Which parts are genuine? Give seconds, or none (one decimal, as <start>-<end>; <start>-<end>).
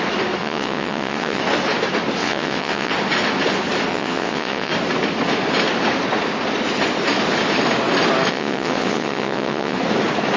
0.0-0.4; 1.4-2.2; 2.9-3.9; 4.7-8.3; 9.8-10.4